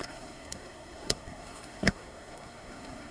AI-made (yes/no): yes